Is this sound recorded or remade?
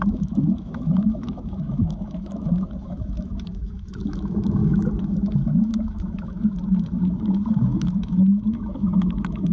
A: remade